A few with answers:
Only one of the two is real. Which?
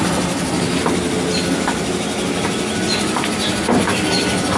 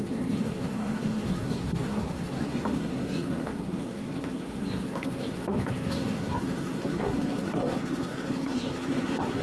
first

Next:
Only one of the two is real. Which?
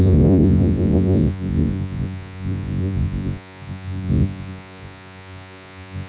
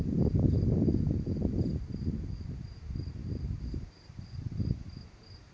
second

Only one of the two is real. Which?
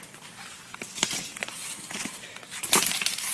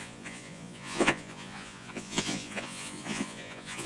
first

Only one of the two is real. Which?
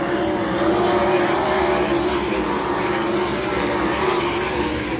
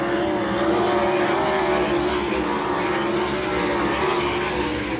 second